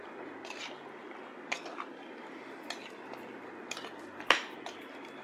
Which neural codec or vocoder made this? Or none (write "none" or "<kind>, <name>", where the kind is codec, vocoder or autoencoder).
none